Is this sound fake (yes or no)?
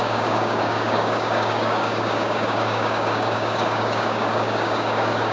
yes